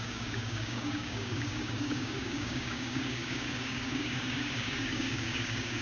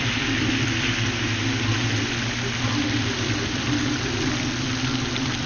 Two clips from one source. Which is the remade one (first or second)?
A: first